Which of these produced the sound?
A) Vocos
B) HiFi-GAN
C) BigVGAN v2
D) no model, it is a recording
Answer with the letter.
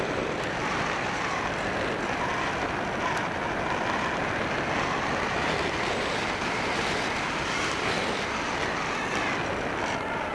D